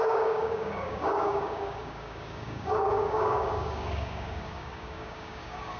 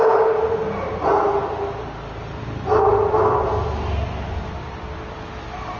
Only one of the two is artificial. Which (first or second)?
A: first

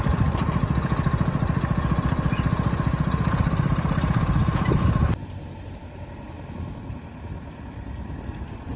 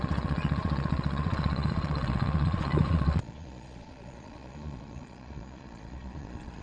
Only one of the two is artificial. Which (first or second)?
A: second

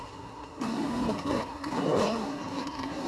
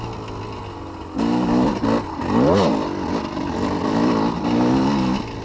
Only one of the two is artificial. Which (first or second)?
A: first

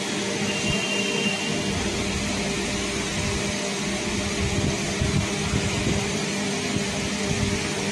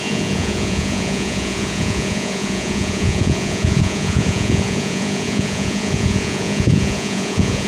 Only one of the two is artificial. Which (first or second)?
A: second